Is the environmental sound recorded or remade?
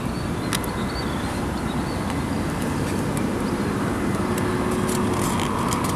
recorded